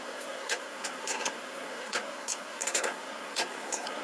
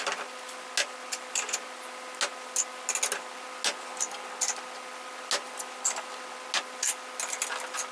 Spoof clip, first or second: first